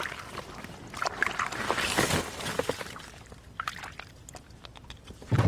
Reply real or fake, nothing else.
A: fake